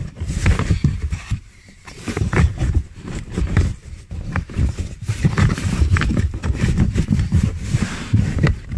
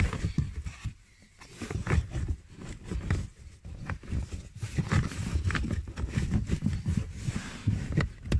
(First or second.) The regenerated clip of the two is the first